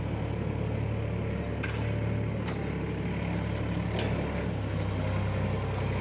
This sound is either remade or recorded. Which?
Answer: recorded